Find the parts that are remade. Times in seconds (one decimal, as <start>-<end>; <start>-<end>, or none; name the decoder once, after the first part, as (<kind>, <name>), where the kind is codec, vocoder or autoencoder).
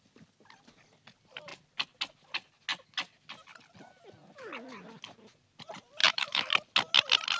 6.0-6.5 (autoencoder, DAC-VAE)